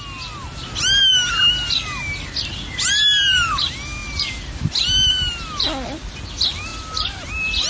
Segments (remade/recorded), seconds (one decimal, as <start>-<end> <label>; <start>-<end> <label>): 0.0-0.4 recorded; 0.4-1.1 remade; 1.1-2.9 recorded; 2.9-3.6 remade; 3.6-6.7 recorded; 6.7-7.3 remade; 7.3-7.7 recorded